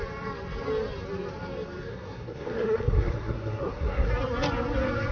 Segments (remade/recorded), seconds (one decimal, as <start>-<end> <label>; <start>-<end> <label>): 0.0-1.9 recorded; 1.9-4.1 remade; 4.1-5.1 recorded